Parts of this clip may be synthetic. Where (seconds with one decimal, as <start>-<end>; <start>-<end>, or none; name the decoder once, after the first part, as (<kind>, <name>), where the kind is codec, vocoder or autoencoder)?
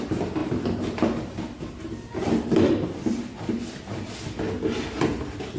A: none